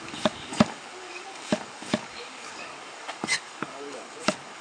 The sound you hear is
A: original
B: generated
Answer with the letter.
B